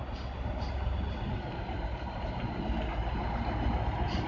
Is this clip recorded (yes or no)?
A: yes